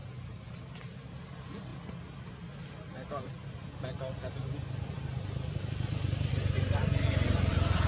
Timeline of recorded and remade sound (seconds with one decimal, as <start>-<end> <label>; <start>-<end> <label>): 0.0-7.9 recorded